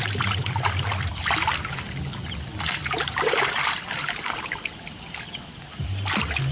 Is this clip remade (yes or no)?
no